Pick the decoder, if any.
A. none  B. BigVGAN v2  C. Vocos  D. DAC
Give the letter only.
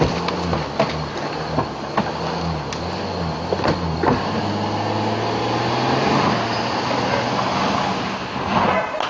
A